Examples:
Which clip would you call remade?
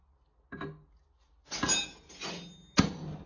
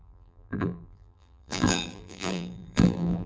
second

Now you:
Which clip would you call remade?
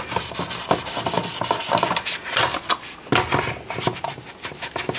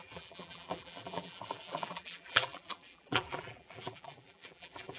second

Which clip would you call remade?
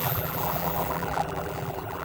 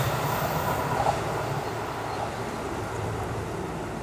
first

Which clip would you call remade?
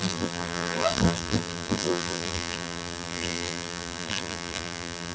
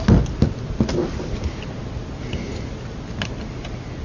first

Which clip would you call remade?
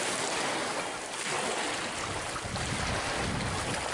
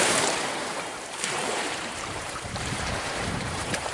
second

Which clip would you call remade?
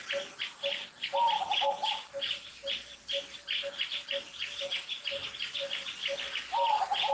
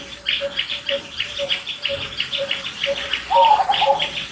second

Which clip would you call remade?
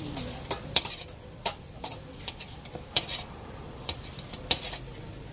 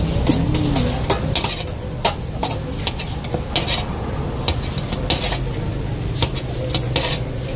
first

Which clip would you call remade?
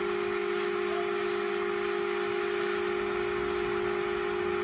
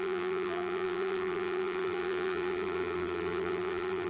second